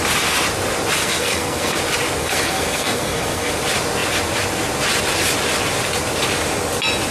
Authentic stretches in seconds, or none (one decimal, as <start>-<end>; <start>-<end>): 0.0-1.0; 1.8-2.2; 3.5-7.1